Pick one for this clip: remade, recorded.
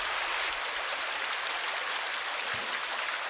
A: recorded